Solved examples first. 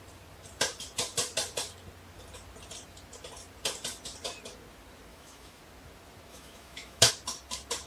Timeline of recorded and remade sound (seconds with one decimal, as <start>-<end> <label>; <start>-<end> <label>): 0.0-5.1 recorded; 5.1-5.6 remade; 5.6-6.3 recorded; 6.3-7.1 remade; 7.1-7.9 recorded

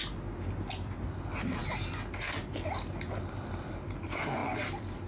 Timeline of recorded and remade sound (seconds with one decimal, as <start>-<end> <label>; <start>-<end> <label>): 0.0-5.1 recorded

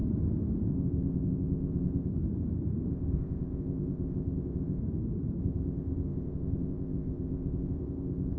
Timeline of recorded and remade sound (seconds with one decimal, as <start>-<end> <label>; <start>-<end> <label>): 0.0-0.7 recorded; 0.7-2.1 remade; 2.1-2.9 recorded; 2.9-4.8 remade; 4.8-5.4 recorded; 5.4-8.4 remade

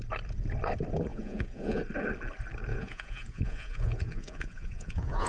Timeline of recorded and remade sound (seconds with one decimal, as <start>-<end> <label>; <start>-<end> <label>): 0.0-1.1 recorded; 1.1-1.8 remade; 1.8-2.7 recorded; 2.7-5.3 remade

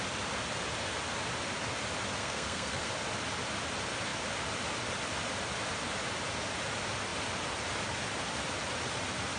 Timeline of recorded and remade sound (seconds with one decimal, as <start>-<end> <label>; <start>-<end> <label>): 0.0-2.2 recorded; 2.2-2.9 remade; 2.9-9.4 recorded

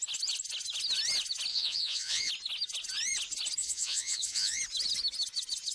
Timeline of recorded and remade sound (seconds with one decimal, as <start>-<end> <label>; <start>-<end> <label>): 0.0-1.5 recorded; 1.5-2.3 remade; 2.3-3.6 recorded; 3.6-4.6 remade; 4.6-5.7 recorded

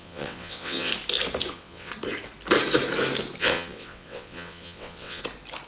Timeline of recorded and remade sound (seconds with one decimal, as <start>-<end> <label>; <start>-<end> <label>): 0.0-0.9 remade; 0.9-1.5 recorded; 1.5-1.9 remade; 1.9-3.4 recorded; 3.4-5.2 remade; 5.2-5.7 recorded

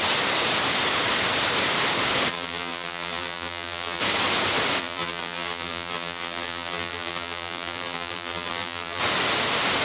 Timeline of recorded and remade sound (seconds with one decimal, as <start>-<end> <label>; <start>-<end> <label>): 0.0-2.3 recorded; 2.3-4.0 remade; 4.0-4.8 recorded; 4.8-9.0 remade; 9.0-9.8 recorded